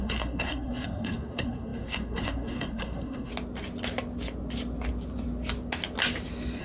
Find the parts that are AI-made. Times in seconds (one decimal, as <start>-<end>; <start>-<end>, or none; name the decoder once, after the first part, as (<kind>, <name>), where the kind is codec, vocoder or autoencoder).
0.0-3.3 (codec, SNAC)